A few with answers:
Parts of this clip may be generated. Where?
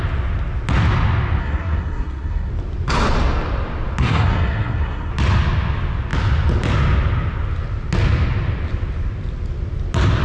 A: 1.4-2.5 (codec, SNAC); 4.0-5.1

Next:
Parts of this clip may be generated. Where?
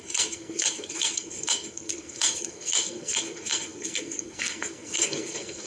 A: 0.0-5.7 (codec, SNAC)